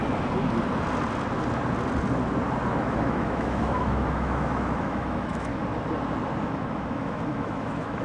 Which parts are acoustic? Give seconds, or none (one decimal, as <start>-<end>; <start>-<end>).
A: 0.0-2.7; 5.5-6.4